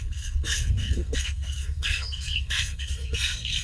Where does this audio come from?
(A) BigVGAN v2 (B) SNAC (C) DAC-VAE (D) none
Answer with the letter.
B